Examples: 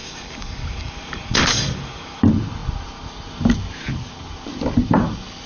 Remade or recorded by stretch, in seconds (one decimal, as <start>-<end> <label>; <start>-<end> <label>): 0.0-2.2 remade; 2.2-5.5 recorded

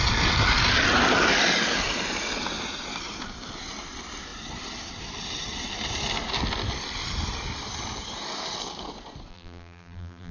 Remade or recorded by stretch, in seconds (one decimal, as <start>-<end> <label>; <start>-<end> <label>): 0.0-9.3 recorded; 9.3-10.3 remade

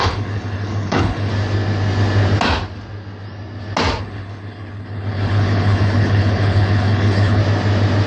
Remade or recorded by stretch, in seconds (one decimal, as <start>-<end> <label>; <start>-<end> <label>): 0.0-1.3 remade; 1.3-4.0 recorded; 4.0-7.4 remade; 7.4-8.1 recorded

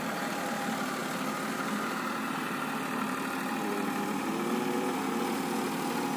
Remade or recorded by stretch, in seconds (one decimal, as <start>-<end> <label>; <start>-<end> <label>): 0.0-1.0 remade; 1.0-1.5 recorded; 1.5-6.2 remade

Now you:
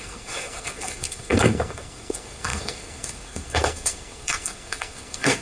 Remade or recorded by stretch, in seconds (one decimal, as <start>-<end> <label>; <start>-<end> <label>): 0.0-5.4 remade